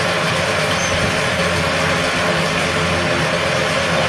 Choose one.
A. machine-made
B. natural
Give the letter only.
B